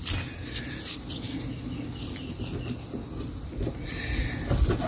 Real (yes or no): yes